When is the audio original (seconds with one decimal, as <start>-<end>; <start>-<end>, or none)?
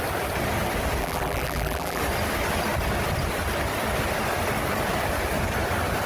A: 0.0-1.0; 2.0-6.1